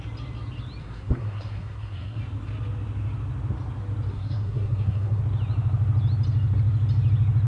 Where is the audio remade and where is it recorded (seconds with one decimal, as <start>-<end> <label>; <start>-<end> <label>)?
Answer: 0.0-0.8 recorded; 0.8-2.2 remade; 2.2-4.1 recorded; 4.1-5.2 remade; 5.2-7.5 recorded